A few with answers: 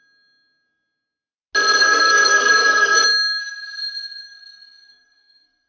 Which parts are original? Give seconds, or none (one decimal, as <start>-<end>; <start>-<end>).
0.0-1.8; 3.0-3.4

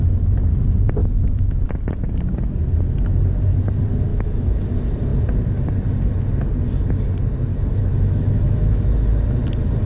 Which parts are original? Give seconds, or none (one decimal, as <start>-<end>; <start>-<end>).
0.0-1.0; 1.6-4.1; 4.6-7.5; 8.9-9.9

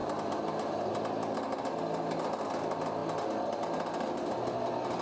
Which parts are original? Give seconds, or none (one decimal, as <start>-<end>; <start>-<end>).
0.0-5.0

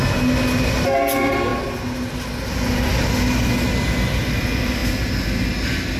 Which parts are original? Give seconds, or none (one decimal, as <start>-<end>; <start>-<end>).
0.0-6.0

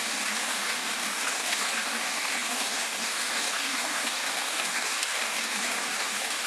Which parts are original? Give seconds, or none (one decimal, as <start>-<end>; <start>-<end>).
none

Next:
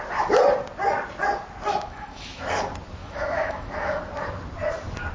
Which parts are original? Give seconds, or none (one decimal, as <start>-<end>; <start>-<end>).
0.0-1.7; 2.4-3.0; 4.0-5.1